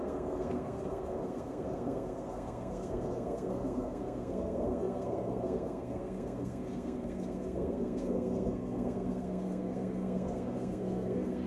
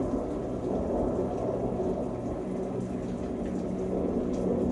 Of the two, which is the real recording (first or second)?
second